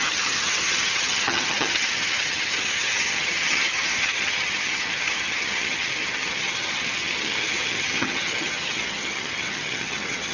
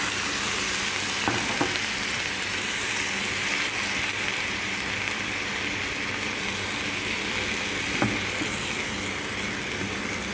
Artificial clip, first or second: first